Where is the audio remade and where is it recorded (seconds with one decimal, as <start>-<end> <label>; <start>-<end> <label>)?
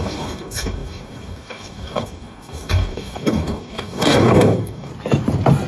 0.0-4.9 remade; 4.9-5.7 recorded